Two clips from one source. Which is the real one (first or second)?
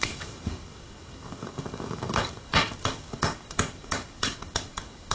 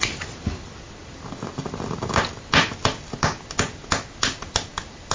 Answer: second